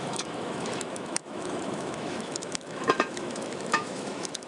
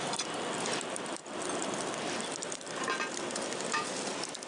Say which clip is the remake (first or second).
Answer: first